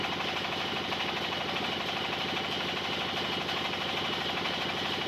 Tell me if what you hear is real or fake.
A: real